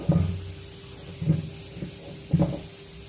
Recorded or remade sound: recorded